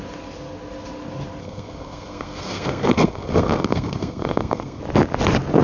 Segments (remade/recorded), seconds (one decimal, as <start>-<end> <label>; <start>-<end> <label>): 0.0-1.4 recorded; 1.4-4.8 remade; 4.8-5.6 recorded